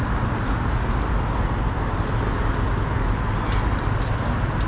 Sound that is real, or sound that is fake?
real